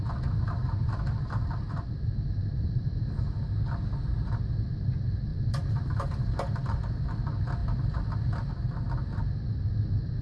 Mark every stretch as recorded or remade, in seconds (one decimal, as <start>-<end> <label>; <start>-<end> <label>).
0.0-0.6 recorded; 0.6-4.4 remade; 4.4-5.3 recorded; 5.3-6.0 remade; 6.0-10.2 recorded